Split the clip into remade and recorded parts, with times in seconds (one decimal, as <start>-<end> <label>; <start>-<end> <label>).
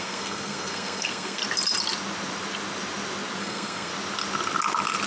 0.0-1.4 remade; 1.4-3.4 recorded; 3.4-3.9 remade; 3.9-5.1 recorded